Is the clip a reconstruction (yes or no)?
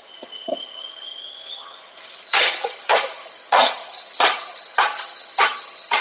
yes